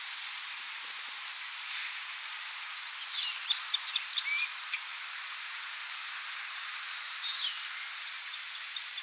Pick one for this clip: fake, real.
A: fake